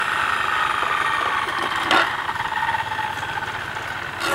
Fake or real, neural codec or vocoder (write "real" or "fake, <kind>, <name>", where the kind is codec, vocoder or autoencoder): real